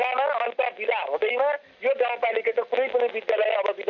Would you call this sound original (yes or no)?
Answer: yes